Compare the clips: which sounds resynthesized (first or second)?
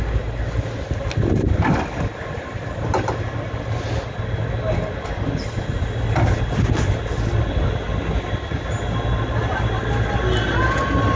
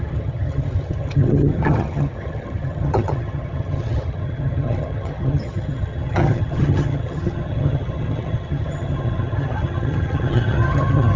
second